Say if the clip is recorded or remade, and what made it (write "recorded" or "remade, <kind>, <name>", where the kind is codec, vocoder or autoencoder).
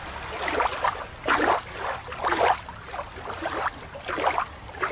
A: recorded